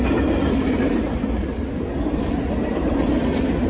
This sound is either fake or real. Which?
fake